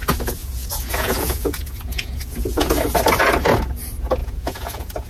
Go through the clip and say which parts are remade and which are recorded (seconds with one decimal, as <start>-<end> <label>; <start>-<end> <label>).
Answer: 0.0-0.4 recorded; 0.4-2.7 remade; 2.7-4.2 recorded; 4.2-5.1 remade